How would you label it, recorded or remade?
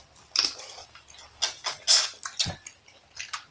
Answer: recorded